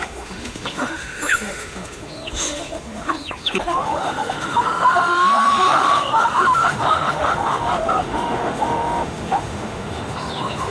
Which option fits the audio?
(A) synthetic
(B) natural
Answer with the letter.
A